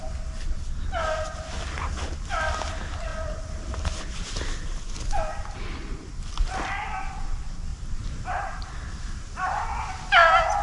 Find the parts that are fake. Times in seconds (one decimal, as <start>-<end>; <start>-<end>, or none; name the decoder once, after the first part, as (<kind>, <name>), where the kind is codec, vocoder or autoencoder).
7.7-9.7 (vocoder, BigVGAN v2)

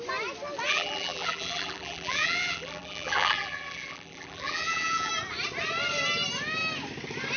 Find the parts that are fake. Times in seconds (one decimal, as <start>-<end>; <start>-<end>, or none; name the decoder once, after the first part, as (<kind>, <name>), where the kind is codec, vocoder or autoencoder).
0.7-5.1 (vocoder, BigVGAN v2)

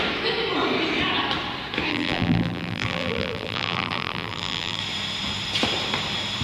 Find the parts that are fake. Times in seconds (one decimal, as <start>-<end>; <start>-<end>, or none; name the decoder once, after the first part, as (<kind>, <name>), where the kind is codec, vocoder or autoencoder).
1.9-4.8 (vocoder, BigVGAN v2)